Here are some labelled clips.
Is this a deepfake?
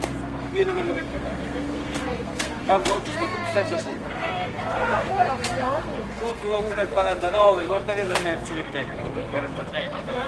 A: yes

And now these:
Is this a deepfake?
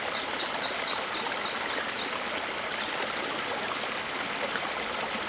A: no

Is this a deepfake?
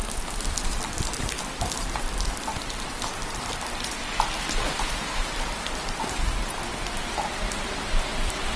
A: no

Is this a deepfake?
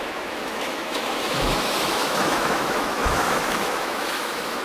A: yes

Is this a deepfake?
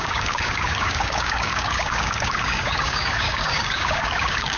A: yes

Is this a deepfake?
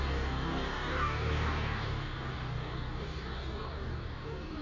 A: yes